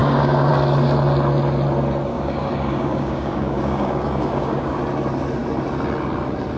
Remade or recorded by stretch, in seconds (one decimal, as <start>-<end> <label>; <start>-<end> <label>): 0.0-0.5 remade; 0.5-2.1 recorded; 2.1-4.8 remade; 4.8-6.6 recorded